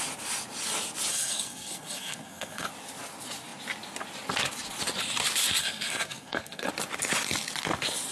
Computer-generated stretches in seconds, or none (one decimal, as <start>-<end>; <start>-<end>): 1.1-2.7; 5.6-6.7